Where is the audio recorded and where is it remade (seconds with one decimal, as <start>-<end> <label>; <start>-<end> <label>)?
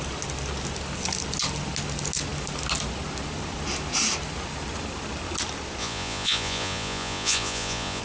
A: 0.0-5.8 recorded; 5.8-8.0 remade